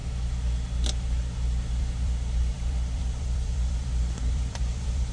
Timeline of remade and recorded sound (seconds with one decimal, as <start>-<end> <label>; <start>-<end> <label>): 0.0-1.8 recorded; 1.8-5.1 remade